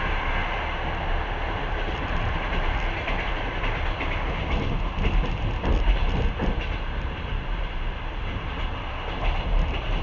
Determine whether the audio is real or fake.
real